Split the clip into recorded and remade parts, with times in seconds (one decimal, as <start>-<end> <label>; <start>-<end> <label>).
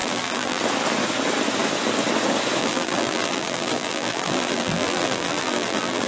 0.0-0.6 remade; 0.6-2.6 recorded; 2.6-6.1 remade